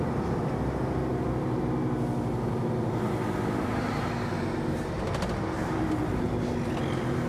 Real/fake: real